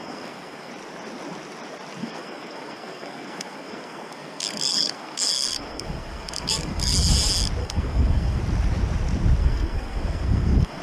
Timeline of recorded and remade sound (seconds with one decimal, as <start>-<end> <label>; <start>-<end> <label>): 0.0-0.7 remade; 0.7-2.0 recorded; 2.0-7.1 remade; 7.1-7.6 recorded; 7.6-8.4 remade; 8.4-9.4 recorded; 9.4-10.8 remade